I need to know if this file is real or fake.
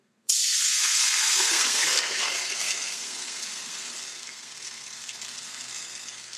fake